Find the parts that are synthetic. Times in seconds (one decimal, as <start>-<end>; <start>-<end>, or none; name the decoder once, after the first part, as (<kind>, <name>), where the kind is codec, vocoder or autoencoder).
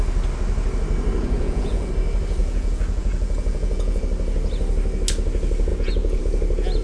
1.2-1.9 (vocoder, Vocos); 2.4-4.0; 5.7-6.2